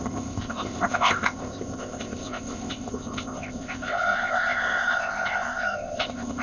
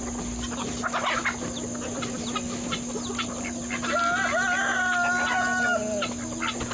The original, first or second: second